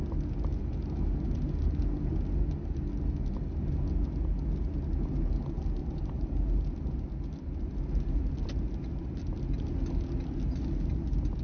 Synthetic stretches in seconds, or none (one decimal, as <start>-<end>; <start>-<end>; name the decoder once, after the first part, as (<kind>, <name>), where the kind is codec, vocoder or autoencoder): 5.8-9.7 (vocoder, BigVGAN v2)